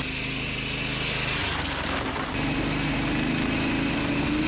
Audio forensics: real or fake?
real